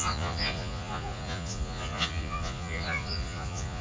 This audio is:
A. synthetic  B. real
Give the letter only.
A